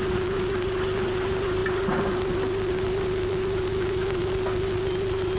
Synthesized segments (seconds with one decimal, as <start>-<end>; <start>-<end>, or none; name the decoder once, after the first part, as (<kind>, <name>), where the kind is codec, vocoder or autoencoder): 3.7-4.3 (autoencoder, DAC-VAE)